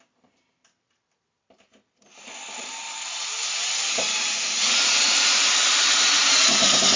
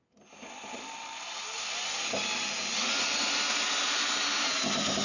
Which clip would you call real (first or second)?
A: second